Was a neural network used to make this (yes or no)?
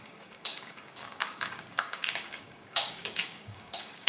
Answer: yes